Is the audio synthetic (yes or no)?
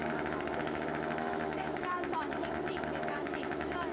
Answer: yes